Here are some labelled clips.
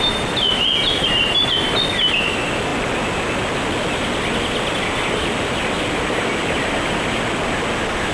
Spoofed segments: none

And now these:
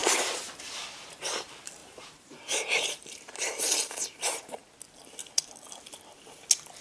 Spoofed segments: 1.1-4.6

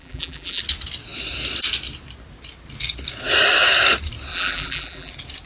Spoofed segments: 0.0-0.6; 4.3-5.1

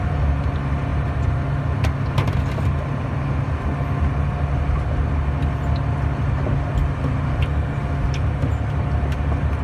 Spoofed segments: none

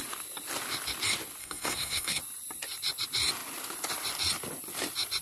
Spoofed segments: 1.4-2.2